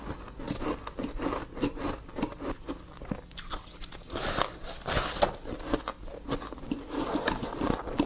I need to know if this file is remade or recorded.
recorded